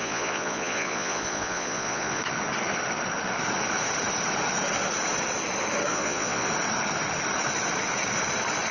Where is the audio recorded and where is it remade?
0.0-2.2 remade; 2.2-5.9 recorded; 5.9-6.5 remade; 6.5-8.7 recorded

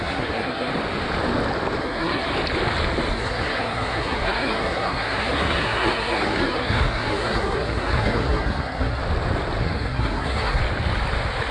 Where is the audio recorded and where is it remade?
0.0-0.7 remade; 0.7-1.8 recorded; 1.8-2.3 remade; 2.3-3.1 recorded; 3.1-9.0 remade; 9.0-9.6 recorded; 9.6-10.6 remade; 10.6-11.5 recorded

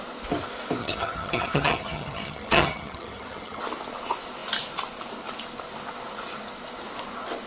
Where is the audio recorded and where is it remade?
0.0-0.8 recorded; 0.8-3.6 remade; 3.6-7.5 recorded